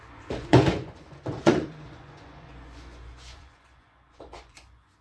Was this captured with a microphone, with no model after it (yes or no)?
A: no